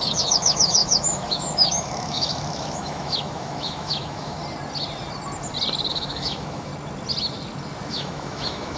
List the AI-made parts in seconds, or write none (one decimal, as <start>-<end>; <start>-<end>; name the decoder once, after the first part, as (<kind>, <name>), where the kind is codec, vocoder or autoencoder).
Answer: 0.0-4.4 (autoencoder, DAC-VAE); 5.9-6.7; 7.9-8.8